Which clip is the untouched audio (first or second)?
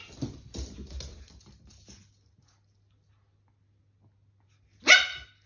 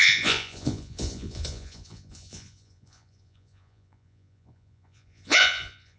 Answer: first